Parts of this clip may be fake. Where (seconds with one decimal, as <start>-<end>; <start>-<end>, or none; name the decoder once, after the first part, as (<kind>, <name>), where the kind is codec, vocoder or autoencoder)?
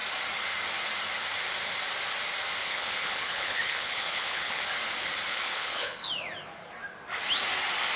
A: 2.6-4.6 (codec, HILCodec); 5.3-6.1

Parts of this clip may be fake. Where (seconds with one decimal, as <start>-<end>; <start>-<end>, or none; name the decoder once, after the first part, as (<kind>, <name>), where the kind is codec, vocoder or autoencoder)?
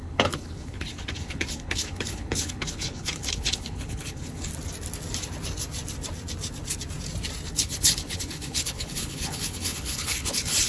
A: 0.0-4.5 (codec, HILCodec); 7.5-10.7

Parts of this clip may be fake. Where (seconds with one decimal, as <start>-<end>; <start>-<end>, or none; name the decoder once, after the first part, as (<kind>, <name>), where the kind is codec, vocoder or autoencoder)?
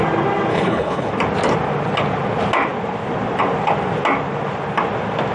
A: 0.5-1.1 (codec, HILCodec)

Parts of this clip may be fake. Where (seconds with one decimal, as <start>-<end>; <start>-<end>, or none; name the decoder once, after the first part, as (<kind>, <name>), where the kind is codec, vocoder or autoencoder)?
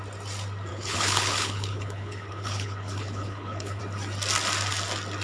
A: 0.7-3.8 (codec, HILCodec)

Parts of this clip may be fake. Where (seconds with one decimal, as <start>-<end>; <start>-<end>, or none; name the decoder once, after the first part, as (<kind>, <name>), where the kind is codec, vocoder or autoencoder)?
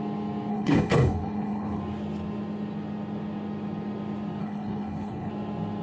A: 0.5-1.8 (codec, HILCodec); 4.4-5.3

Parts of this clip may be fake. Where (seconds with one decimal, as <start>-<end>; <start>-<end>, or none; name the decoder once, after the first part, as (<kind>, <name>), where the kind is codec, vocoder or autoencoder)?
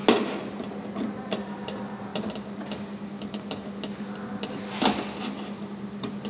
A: none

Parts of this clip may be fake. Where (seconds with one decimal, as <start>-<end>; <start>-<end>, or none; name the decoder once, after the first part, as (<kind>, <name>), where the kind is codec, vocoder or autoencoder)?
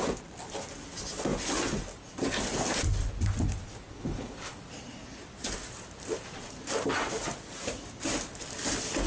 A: 3.9-4.6 (codec, HILCodec)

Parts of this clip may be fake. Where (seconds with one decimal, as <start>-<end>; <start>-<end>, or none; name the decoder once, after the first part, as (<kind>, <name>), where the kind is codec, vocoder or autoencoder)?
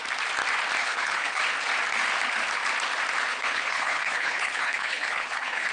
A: 0.8-1.4 (codec, HILCodec); 3.3-5.7